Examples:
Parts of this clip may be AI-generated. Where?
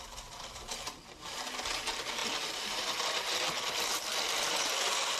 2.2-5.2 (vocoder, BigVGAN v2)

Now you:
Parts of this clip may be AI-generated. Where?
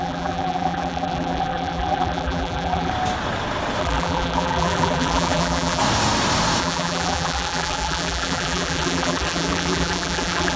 0.0-2.9 (vocoder, BigVGAN v2); 3.8-5.8; 6.6-10.6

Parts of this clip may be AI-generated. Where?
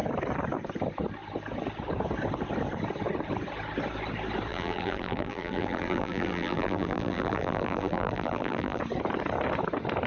4.5-8.8 (vocoder, BigVGAN v2)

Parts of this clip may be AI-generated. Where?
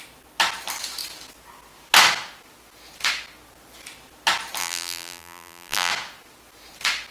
4.6-5.9 (vocoder, BigVGAN v2)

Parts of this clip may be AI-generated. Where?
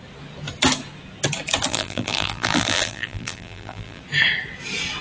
1.7-4.0 (vocoder, BigVGAN v2)